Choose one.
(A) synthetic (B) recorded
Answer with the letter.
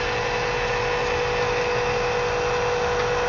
B